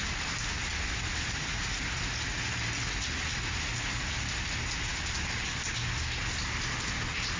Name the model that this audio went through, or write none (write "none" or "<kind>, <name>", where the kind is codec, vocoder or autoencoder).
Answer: none